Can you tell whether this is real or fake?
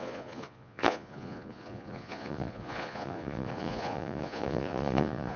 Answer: fake